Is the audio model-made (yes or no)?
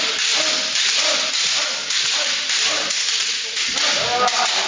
no